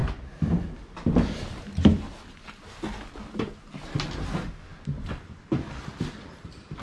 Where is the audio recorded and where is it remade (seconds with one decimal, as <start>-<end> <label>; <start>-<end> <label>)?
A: 0.0-6.8 recorded